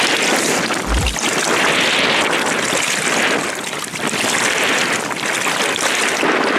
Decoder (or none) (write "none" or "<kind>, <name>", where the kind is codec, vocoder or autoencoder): none